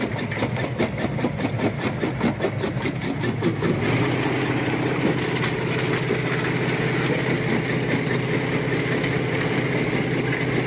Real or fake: real